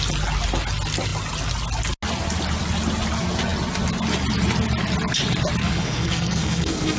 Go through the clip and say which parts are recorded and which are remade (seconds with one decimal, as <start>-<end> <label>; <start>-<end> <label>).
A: 0.0-5.6 recorded; 5.6-7.0 remade